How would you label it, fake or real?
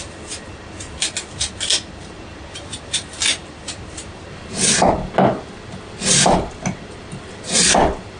real